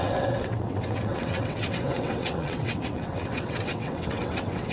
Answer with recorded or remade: remade